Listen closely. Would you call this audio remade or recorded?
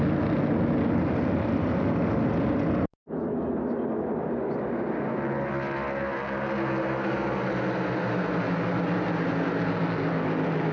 recorded